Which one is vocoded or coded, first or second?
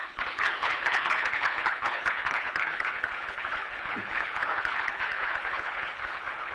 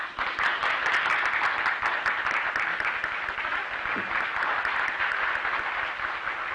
first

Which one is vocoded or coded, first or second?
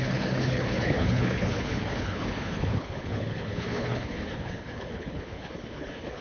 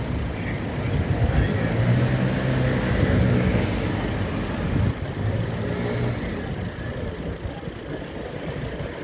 first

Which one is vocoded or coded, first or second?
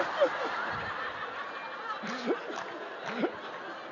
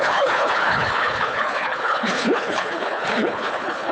second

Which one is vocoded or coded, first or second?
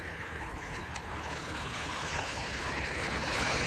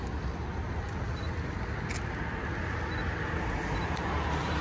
first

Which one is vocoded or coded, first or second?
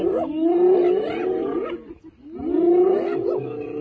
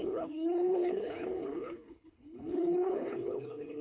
second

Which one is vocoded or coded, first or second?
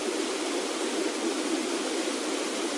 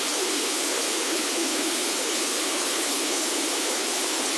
second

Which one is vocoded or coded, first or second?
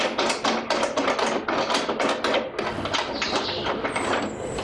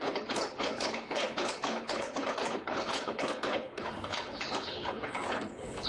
second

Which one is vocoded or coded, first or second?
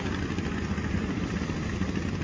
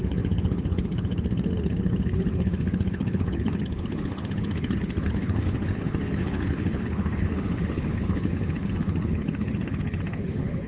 second